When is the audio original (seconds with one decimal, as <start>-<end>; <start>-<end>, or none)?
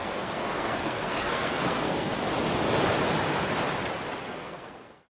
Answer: 2.1-4.2